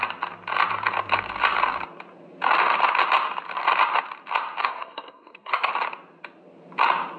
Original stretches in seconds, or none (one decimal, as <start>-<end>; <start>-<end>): 0.0-4.6; 5.7-7.2